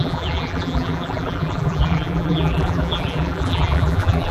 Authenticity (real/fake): fake